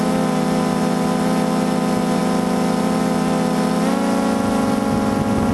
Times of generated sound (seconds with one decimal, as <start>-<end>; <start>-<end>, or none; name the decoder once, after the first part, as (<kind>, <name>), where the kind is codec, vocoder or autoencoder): none